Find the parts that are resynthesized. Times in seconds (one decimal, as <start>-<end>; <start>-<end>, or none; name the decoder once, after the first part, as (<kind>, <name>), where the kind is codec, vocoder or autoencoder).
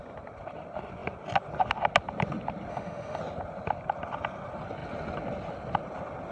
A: 2.7-3.2 (autoencoder, DAC-VAE)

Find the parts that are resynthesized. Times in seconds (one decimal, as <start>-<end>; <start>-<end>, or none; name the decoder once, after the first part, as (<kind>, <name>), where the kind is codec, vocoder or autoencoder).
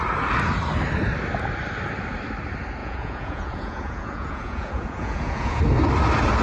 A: 2.8-5.6 (vocoder, Vocos)